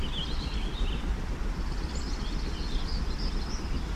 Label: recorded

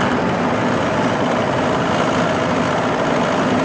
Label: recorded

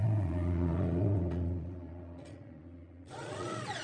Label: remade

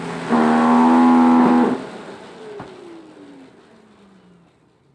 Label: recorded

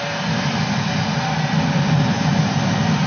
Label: recorded